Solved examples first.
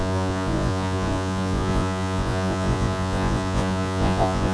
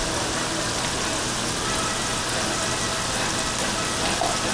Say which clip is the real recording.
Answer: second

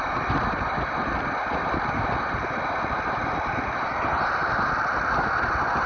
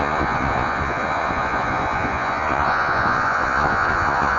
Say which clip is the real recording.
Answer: first